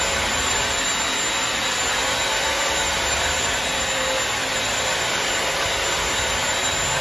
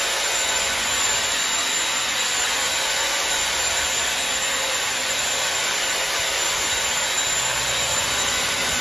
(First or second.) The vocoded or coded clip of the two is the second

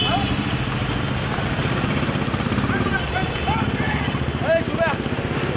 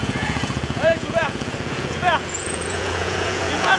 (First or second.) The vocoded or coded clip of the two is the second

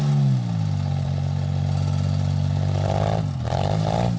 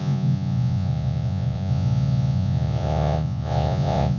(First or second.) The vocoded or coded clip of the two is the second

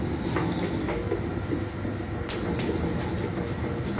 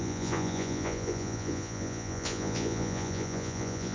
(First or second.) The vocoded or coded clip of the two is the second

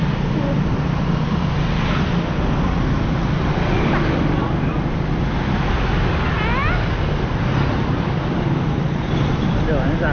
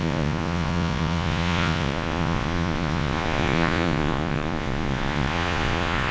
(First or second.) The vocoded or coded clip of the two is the second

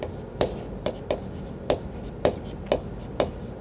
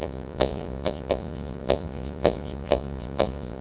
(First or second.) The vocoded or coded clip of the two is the second